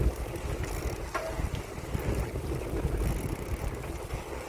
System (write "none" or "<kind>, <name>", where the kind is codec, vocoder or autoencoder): none